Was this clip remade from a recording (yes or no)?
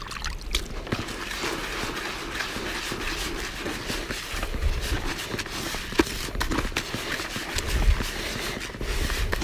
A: no